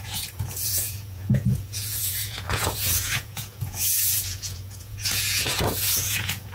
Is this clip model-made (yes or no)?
yes